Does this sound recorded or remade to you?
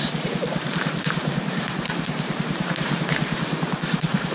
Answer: remade